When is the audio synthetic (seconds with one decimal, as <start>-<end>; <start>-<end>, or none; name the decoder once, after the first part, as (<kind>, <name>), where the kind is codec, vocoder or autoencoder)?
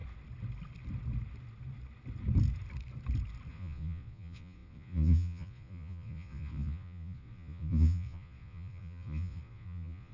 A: 3.5-10.1 (vocoder, Vocos)